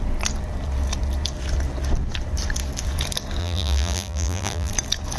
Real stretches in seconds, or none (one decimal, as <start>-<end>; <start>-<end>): 0.0-3.4; 4.7-5.2